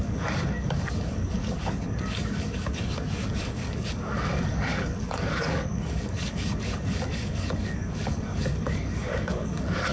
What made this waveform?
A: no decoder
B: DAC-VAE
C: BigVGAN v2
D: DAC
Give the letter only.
D